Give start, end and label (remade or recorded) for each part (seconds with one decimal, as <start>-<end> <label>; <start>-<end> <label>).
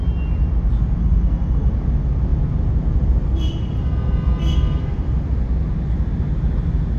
0.0-1.0 recorded; 1.0-1.7 remade; 1.7-7.0 recorded